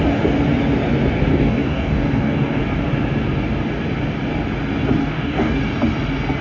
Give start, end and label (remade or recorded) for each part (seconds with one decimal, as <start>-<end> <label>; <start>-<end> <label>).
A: 0.0-1.3 recorded; 1.3-2.6 remade; 2.6-5.0 recorded; 5.0-5.6 remade; 5.6-6.4 recorded